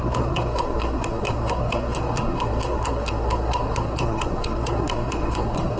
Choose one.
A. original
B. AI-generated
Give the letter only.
B